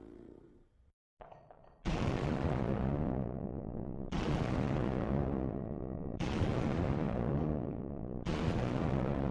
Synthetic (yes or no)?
yes